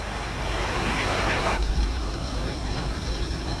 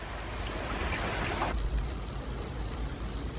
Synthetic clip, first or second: first